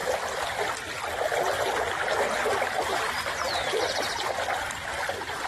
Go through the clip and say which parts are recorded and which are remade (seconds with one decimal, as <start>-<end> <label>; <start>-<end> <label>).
0.0-0.6 remade; 0.6-2.9 recorded; 2.9-5.1 remade; 5.1-5.5 recorded